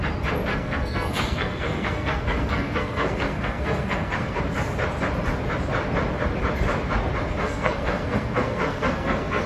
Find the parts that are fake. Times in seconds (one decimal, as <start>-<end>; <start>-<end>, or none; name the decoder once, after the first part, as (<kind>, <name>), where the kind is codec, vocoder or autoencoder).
0.5-4.4 (codec, SNAC); 7.4-9.5